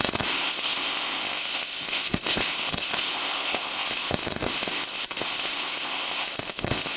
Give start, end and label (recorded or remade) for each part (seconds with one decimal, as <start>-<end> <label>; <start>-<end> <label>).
0.0-7.0 remade